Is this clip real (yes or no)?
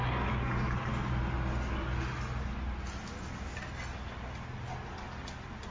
yes